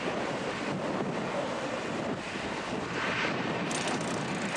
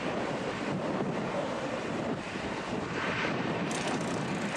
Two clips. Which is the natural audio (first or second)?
first